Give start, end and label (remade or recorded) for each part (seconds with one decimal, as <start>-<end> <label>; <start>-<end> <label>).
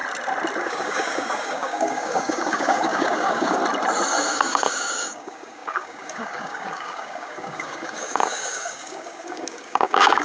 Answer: 0.0-0.6 recorded; 0.6-3.6 remade; 3.6-4.3 recorded; 4.3-10.2 remade